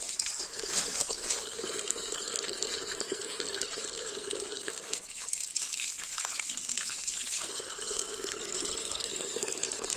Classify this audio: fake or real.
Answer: fake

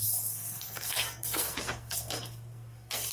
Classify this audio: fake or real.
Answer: fake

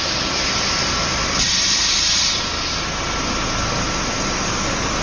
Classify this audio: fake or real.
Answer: real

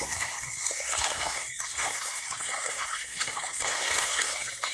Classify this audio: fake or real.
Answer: fake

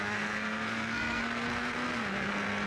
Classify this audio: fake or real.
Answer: fake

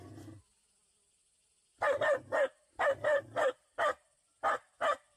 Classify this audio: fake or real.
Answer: real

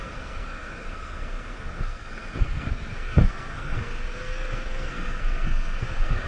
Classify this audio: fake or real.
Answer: fake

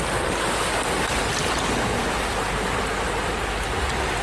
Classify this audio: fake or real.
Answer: real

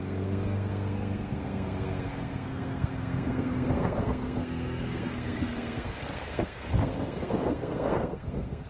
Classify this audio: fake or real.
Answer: fake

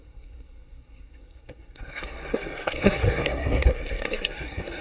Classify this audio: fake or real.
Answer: fake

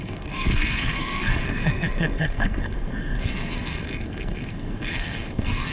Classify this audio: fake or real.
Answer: fake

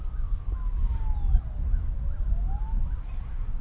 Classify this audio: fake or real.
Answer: real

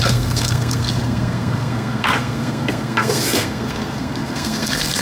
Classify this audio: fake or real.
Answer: fake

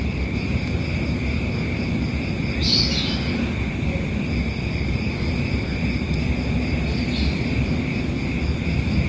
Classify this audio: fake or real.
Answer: real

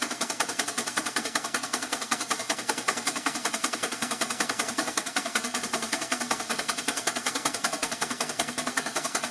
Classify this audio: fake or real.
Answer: fake